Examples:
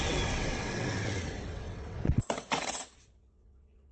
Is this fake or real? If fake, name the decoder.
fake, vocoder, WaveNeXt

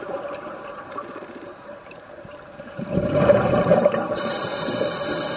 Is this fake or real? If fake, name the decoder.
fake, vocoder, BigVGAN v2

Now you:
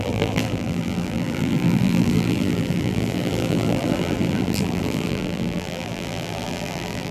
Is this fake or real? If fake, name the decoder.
fake, vocoder, BigVGAN v2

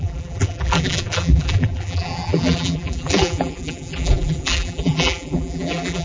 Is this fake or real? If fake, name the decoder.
fake, vocoder, BigVGAN v2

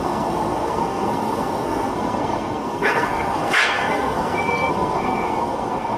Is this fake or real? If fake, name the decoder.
fake, codec, SNAC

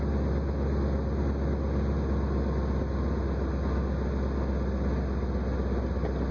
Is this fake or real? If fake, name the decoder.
real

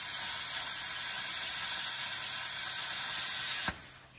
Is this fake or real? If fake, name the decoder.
real